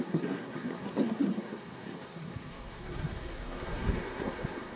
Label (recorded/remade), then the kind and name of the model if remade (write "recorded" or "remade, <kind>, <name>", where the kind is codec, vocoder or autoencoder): remade, codec, SNAC